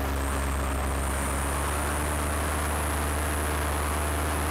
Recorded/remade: recorded